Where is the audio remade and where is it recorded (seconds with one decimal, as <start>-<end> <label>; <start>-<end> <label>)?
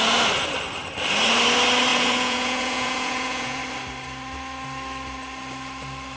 0.0-1.9 recorded; 1.9-3.6 remade; 3.6-6.2 recorded